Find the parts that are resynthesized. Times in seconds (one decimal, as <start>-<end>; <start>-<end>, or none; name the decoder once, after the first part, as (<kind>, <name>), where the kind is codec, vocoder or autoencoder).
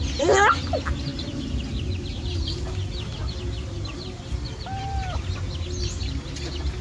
none